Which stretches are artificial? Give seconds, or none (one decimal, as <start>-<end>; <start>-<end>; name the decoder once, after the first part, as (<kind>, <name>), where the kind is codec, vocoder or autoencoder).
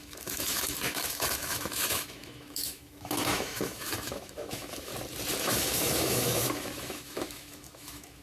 0.0-4.9 (autoencoder, DAC-VAE); 5.4-8.2